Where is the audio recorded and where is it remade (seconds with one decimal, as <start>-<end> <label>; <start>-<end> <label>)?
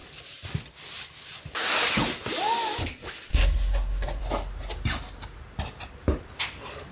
0.0-3.3 recorded; 3.3-4.2 remade; 4.2-6.9 recorded